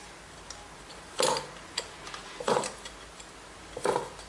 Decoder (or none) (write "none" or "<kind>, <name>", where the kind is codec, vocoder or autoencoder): none